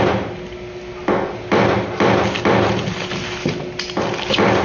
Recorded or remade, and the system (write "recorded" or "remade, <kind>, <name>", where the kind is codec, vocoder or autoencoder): recorded